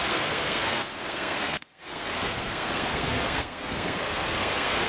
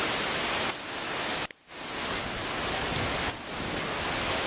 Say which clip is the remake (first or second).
first